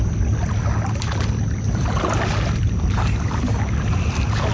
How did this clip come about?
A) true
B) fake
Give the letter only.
A